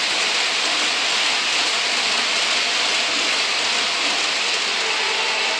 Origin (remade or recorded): recorded